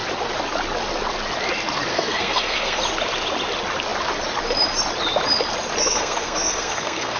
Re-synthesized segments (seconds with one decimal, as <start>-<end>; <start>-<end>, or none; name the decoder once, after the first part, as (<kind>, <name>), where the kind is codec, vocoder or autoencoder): 1.9-2.8 (codec, SNAC); 5.8-7.2